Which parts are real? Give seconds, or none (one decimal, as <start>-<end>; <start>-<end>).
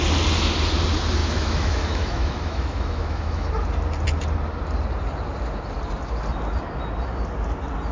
0.0-1.2; 3.5-7.9